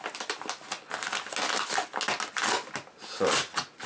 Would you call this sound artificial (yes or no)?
no